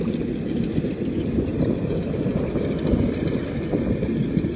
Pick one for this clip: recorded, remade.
recorded